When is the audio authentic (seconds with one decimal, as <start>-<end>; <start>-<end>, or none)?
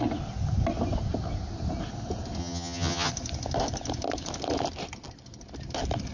0.0-2.4; 3.1-6.1